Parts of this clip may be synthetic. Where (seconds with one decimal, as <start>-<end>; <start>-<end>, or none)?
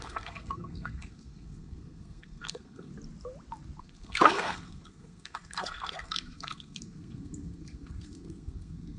0.0-2.9; 3.8-9.0